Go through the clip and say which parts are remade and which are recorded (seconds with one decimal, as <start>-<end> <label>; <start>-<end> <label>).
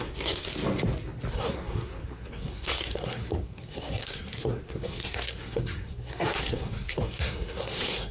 0.0-0.5 remade; 0.5-1.3 recorded; 1.3-8.1 remade